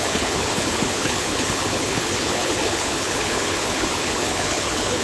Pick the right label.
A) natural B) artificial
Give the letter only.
B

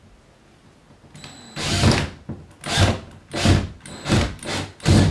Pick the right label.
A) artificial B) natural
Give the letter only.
B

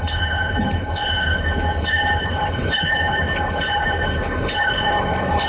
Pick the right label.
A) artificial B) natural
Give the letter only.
A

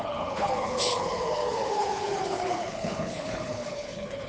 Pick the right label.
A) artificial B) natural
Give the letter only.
A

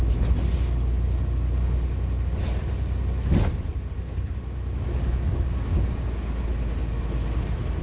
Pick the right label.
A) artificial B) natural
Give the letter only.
B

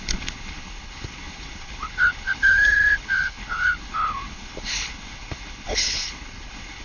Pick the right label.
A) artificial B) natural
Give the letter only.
A